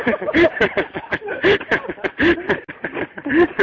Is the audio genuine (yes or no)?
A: yes